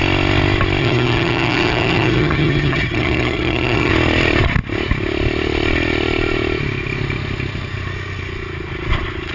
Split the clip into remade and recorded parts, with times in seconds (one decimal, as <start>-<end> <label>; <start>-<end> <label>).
0.0-0.8 recorded; 0.8-3.9 remade; 3.9-9.3 recorded